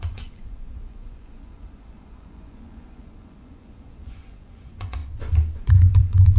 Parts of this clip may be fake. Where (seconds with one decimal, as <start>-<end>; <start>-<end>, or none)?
0.0-5.0; 5.6-6.4